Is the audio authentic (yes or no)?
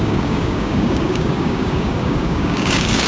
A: no